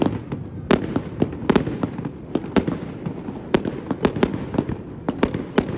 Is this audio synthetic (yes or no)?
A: no